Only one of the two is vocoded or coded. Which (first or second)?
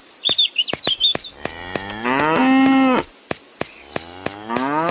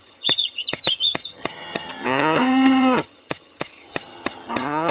second